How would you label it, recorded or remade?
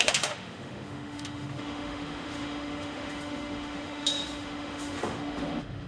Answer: remade